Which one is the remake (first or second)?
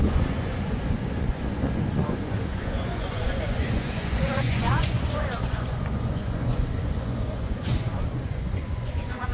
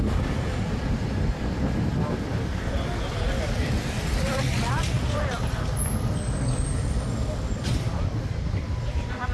first